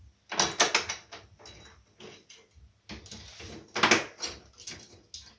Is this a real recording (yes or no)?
yes